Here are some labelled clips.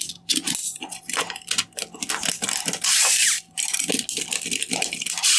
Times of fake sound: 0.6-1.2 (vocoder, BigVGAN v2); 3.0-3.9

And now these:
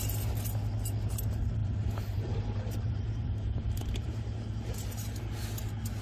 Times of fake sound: 1.6-5.2 (vocoder, BigVGAN v2)

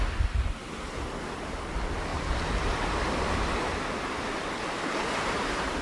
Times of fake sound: 2.1-4.5 (vocoder, BigVGAN v2)

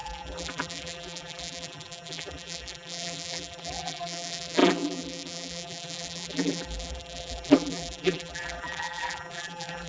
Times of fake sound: 0.0-9.9 (vocoder, BigVGAN v2)

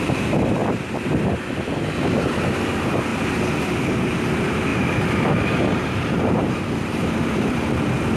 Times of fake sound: 0.0-0.6 (vocoder, BigVGAN v2); 2.2-3.1; 4.1-8.2

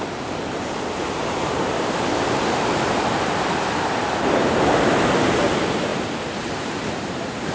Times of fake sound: 1.2-5.2 (vocoder, BigVGAN v2); 5.9-7.5

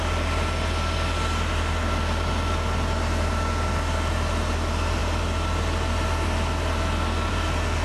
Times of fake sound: none

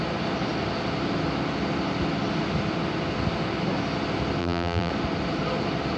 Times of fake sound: 4.4-4.9 (vocoder, BigVGAN v2)